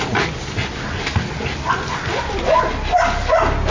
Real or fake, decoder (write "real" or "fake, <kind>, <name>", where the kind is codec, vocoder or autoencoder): real